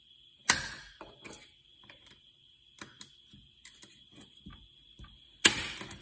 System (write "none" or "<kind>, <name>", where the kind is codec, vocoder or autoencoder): none